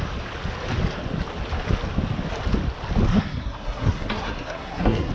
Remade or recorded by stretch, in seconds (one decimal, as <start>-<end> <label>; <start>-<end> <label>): 0.0-3.1 recorded; 3.1-5.1 remade